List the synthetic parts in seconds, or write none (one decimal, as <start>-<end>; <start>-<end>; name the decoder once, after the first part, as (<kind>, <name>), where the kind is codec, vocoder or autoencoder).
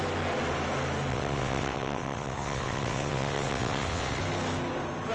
1.1-4.2 (vocoder, WaveNeXt)